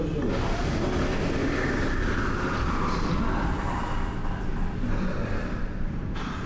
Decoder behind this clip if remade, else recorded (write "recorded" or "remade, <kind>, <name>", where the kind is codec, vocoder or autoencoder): recorded